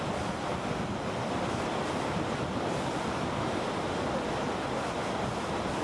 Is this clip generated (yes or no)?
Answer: no